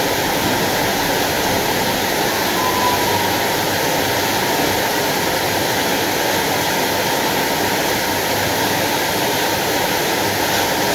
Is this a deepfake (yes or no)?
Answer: no